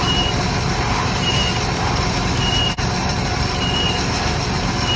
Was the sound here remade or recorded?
recorded